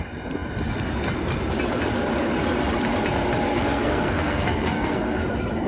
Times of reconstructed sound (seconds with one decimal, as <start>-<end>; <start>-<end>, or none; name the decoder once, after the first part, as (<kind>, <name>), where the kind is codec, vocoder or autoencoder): 3.5-5.2 (codec, SNAC)